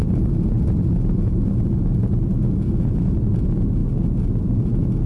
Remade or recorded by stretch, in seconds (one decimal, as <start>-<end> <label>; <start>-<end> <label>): 0.0-5.1 recorded